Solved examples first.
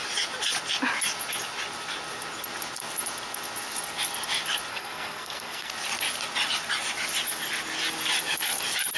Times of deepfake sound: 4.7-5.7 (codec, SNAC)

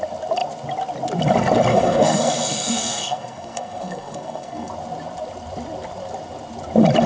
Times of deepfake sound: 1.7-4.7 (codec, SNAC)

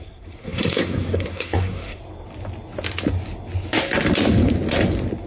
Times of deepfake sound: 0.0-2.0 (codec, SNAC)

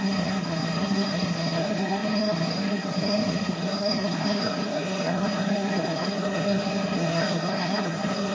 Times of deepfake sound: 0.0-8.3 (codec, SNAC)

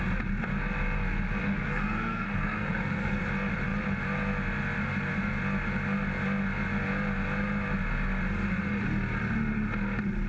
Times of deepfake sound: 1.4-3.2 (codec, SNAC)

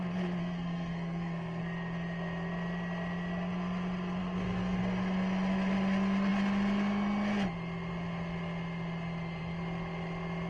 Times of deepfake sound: 0.4-1.6 (codec, SNAC); 4.2-4.8

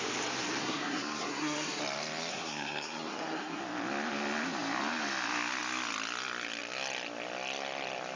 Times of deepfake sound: 0.6-1.8 (codec, SNAC); 2.3-3.6

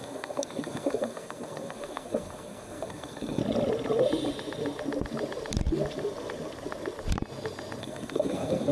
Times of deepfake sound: 0.0-3.4 (codec, SNAC); 7.8-8.7